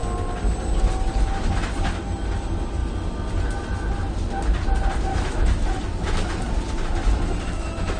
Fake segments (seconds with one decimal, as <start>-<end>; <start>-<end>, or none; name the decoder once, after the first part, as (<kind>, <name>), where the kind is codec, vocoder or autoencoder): 5.1-5.7 (autoencoder, DAC-VAE)